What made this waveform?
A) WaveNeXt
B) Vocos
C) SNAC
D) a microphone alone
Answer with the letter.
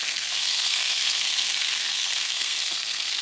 C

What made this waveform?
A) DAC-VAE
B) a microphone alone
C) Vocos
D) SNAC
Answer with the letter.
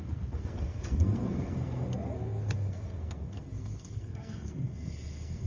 D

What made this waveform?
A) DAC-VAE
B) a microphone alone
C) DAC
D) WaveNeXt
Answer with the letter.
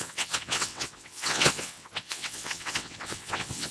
D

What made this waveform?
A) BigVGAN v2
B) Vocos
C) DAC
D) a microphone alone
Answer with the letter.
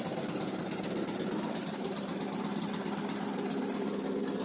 D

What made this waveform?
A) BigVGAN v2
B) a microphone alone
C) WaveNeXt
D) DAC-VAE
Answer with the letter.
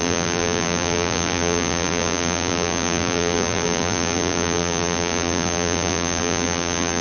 A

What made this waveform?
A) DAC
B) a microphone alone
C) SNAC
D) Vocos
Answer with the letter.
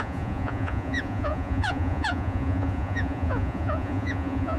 D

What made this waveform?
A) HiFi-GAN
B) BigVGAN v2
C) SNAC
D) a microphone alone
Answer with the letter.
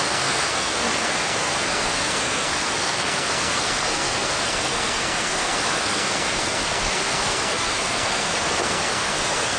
C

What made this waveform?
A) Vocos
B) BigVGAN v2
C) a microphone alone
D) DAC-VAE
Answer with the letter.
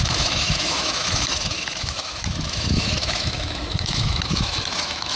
D